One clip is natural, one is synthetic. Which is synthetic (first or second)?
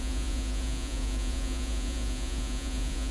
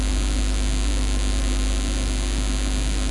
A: first